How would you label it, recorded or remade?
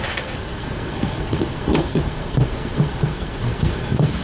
remade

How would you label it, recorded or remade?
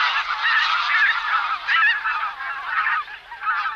recorded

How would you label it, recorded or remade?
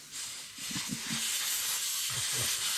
recorded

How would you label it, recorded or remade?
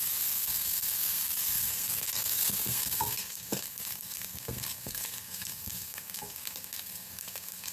remade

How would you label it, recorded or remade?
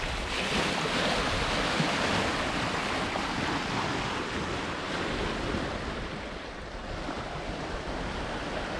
recorded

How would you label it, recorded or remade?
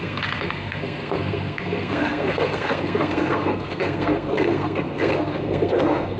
remade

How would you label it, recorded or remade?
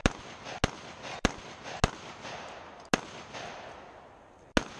recorded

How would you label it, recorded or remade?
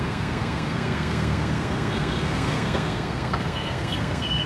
remade